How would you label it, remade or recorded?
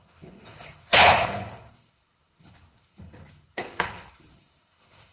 remade